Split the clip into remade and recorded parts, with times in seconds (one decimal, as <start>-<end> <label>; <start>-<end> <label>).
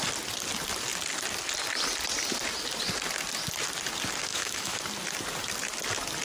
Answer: 0.0-4.3 recorded; 4.3-4.8 remade; 4.8-6.2 recorded